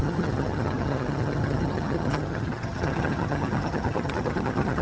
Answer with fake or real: fake